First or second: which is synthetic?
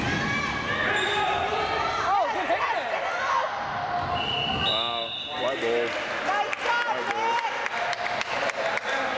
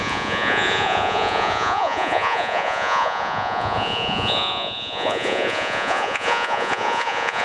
second